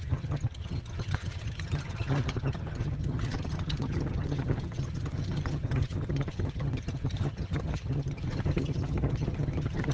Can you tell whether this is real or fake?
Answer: fake